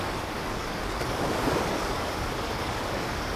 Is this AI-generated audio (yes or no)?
yes